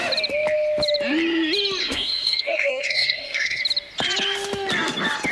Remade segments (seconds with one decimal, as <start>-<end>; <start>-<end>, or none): 1.8-3.6